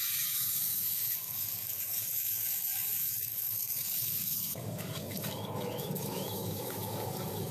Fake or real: fake